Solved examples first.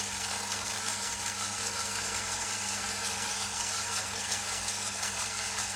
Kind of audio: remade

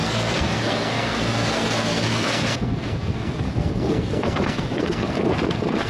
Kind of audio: remade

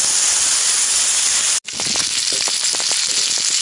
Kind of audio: recorded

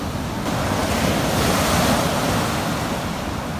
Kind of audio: recorded